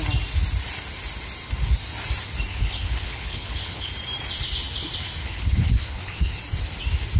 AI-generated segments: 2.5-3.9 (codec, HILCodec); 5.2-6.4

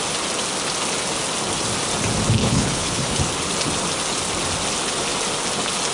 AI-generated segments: 2.4-3.2 (codec, HILCodec)

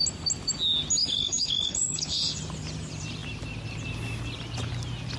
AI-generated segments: 1.0-2.4 (codec, HILCodec)